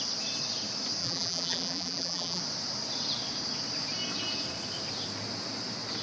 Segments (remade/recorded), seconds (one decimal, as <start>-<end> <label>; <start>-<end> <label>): 0.0-1.0 recorded; 1.0-2.4 remade; 2.4-6.0 recorded